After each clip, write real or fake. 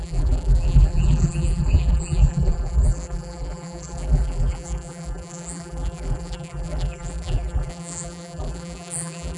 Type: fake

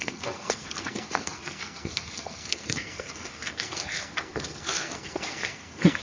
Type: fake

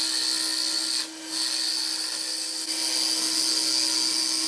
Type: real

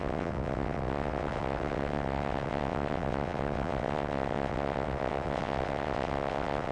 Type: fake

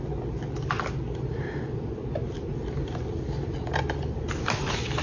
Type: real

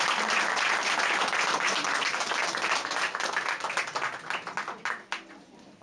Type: real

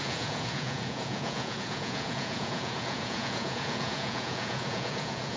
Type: fake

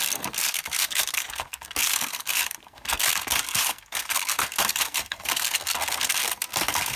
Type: fake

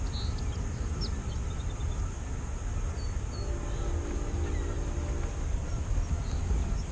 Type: real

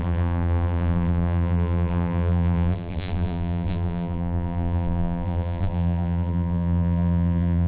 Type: fake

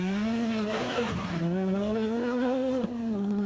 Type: fake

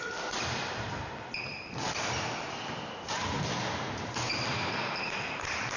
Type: real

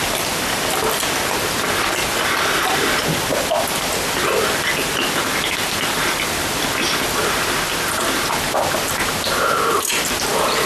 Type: real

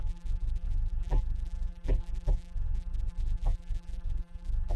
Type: fake